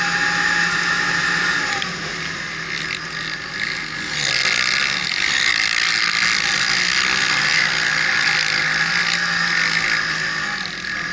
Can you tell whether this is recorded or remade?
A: recorded